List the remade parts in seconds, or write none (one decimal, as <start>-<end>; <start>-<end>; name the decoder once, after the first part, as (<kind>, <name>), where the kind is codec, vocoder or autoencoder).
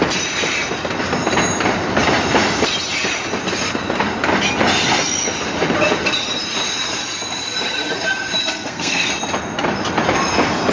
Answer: 8.4-9.1 (codec, SNAC)